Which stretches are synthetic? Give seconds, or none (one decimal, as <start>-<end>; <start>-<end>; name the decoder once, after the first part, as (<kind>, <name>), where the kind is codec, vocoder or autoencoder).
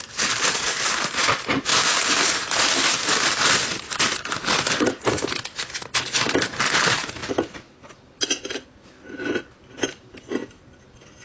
none